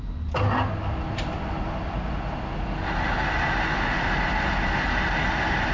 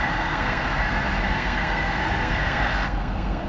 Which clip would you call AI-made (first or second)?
second